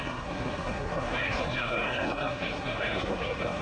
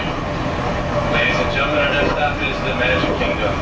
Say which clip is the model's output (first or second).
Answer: first